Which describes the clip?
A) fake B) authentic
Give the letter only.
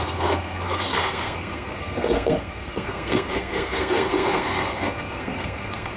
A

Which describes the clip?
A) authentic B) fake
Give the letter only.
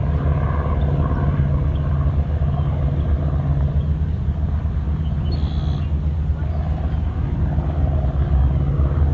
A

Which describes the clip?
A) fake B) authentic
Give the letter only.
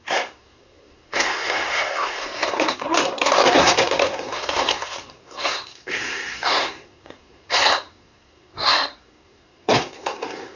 A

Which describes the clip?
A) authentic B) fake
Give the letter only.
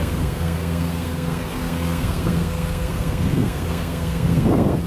B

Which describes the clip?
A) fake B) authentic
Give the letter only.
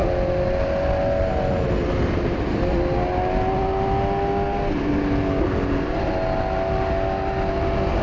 B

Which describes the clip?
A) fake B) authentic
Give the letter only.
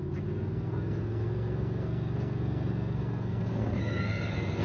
A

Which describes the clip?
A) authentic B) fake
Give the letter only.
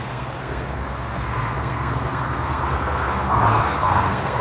B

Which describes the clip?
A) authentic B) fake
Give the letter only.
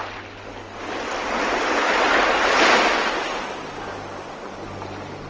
A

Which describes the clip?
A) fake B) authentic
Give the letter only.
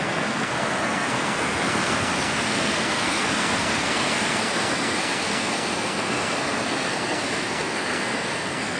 A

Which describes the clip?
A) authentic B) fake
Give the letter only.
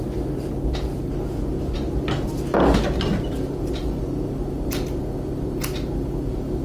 A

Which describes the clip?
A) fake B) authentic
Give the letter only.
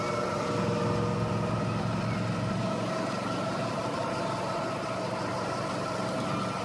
B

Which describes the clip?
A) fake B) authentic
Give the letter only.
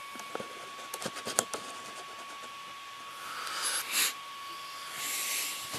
B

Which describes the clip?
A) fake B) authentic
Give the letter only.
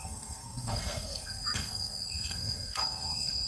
A